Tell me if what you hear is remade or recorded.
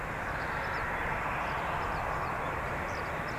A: recorded